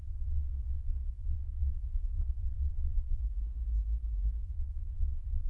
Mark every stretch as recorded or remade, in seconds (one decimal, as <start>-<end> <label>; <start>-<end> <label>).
0.0-3.2 remade; 3.2-4.4 recorded; 4.4-5.5 remade